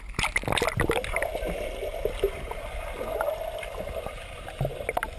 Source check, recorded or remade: recorded